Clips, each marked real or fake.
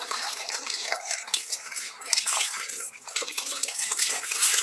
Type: fake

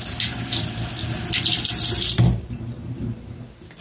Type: real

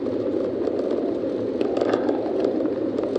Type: real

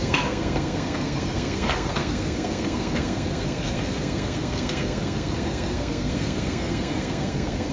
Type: fake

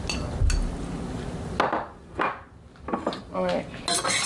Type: real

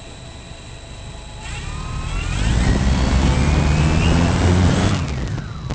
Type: real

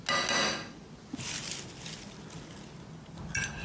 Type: real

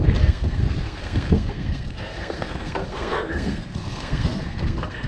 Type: fake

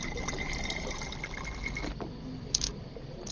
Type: real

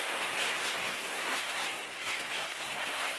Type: fake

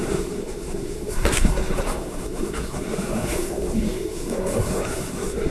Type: fake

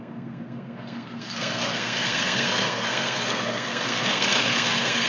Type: fake